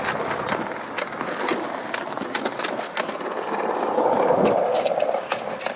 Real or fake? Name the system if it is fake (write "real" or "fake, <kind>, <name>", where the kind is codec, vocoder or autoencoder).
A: real